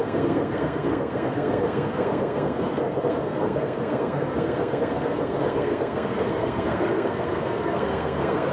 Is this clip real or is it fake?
fake